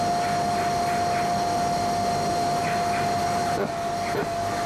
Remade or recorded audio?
recorded